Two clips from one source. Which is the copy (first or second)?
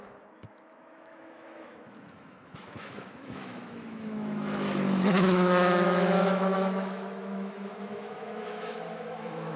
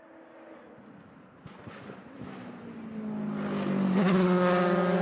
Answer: first